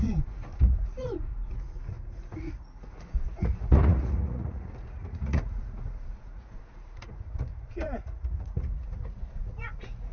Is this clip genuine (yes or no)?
no